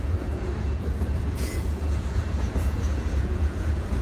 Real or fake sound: fake